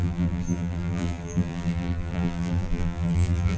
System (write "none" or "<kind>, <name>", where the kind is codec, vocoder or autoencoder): vocoder, BigVGAN v2